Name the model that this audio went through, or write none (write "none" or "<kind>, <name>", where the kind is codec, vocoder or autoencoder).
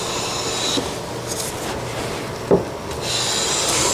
none